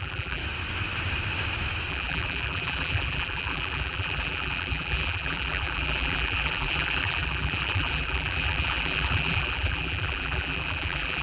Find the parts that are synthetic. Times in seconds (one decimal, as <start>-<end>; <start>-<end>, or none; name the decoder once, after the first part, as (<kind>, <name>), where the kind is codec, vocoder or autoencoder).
0.0-0.4 (vocoder, BigVGAN v2); 1.9-11.2